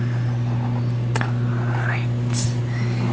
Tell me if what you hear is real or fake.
real